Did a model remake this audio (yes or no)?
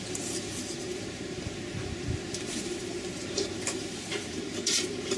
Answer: yes